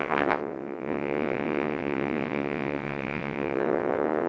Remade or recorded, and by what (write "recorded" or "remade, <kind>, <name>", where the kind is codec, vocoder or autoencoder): remade, vocoder, WaveNeXt